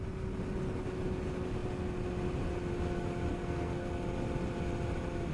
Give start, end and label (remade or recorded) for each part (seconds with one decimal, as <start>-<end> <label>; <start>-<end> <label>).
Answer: 0.0-3.3 recorded; 3.3-3.9 remade; 3.9-5.3 recorded